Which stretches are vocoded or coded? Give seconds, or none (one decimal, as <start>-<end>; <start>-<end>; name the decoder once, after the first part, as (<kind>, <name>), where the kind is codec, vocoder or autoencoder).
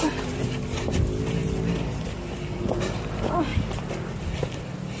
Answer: 1.4-2.7 (vocoder, BigVGAN v2); 3.5-4.2